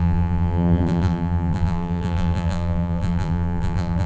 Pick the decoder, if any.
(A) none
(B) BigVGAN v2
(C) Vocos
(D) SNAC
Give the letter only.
B